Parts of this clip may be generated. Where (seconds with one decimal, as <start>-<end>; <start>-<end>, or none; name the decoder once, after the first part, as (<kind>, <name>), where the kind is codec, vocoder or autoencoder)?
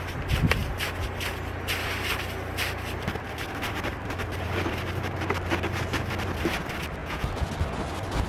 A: 7.0-7.5 (vocoder, Vocos)